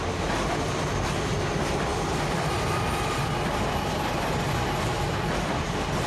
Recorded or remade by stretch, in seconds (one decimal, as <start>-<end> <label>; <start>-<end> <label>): 0.0-6.1 recorded

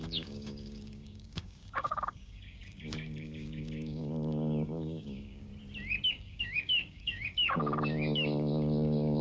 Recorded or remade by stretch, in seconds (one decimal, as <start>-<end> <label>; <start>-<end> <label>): 0.0-5.5 remade; 5.5-6.1 recorded; 6.1-9.2 remade

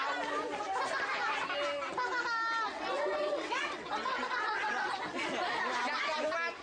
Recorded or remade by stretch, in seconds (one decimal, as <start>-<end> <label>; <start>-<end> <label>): 0.0-2.7 recorded; 2.7-4.9 remade; 4.9-6.6 recorded